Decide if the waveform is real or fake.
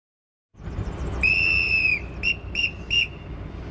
real